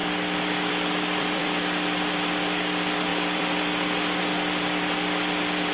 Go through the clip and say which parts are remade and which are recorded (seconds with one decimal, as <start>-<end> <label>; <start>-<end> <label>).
0.0-0.7 recorded; 0.7-5.7 remade